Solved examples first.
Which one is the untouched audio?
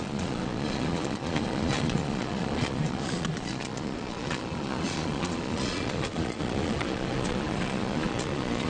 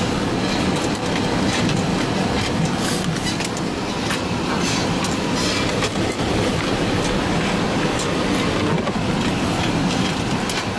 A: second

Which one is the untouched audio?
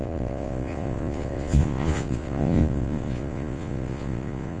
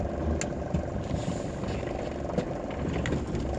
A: second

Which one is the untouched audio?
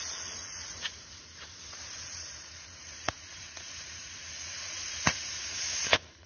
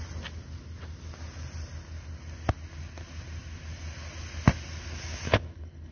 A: second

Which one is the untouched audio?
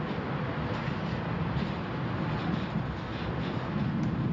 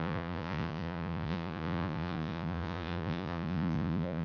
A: first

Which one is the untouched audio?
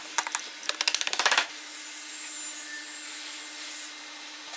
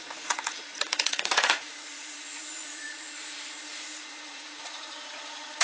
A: first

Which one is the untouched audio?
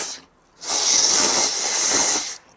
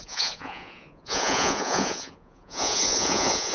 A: first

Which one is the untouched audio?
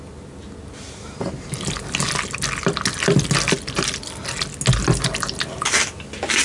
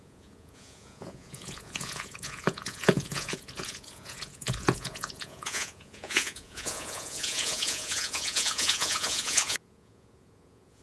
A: first